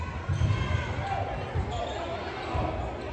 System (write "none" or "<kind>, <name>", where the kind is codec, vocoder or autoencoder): none